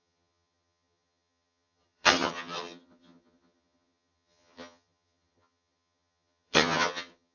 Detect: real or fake fake